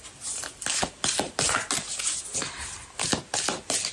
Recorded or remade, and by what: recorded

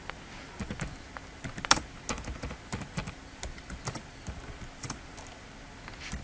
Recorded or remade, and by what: recorded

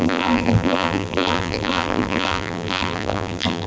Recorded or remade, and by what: remade, vocoder, BigVGAN v2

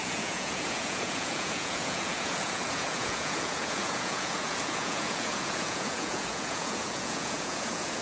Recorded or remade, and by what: remade, vocoder, Vocos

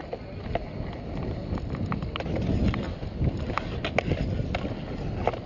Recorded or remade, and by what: recorded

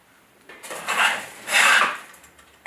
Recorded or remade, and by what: remade, vocoder, BigVGAN v2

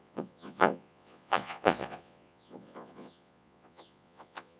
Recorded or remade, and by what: remade, vocoder, Vocos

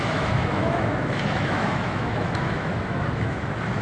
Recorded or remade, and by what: remade, autoencoder, DAC-VAE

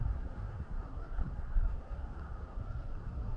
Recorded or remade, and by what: remade, codec, SNAC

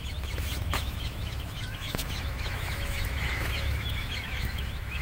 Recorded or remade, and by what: remade, autoencoder, DAC-VAE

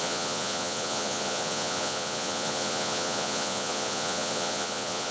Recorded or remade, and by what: remade, vocoder, Vocos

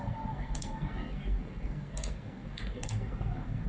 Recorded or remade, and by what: remade, codec, SNAC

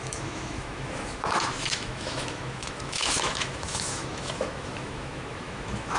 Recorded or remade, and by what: remade, autoencoder, DAC-VAE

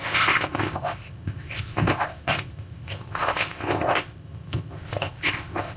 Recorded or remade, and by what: remade, codec, ZipCodec